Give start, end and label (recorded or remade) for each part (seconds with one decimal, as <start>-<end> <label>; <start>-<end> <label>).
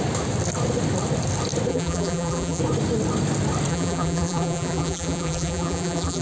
0.0-1.7 recorded; 1.7-2.6 remade; 2.6-3.7 recorded; 3.7-6.2 remade